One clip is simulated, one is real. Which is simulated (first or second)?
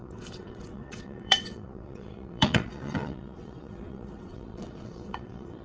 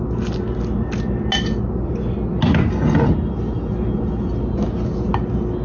first